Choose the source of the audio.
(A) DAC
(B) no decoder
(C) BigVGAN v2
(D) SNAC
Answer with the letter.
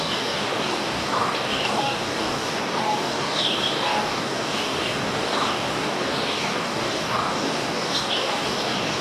A